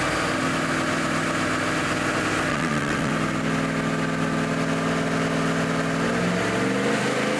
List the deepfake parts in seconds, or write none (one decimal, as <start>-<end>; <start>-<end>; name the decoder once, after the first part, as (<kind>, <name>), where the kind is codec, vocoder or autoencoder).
2.5-3.1 (vocoder, WaveNeXt)